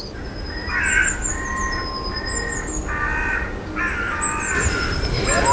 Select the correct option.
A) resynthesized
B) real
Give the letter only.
B